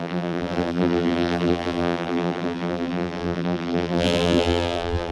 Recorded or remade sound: remade